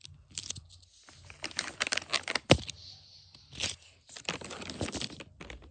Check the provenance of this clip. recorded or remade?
recorded